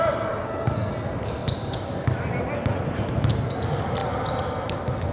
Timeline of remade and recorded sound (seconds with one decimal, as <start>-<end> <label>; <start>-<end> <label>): 0.0-0.4 recorded; 0.4-0.9 remade; 0.9-5.1 recorded